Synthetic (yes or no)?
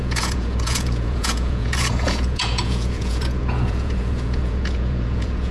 yes